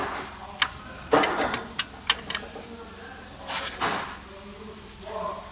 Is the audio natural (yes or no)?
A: yes